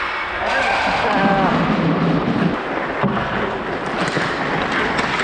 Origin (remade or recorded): recorded